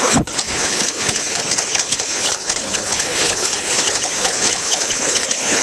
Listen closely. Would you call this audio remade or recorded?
remade